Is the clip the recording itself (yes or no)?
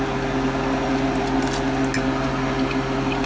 yes